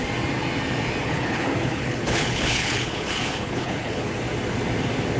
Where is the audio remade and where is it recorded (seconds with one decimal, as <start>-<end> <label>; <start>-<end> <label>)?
0.0-1.0 recorded; 1.0-4.1 remade; 4.1-5.2 recorded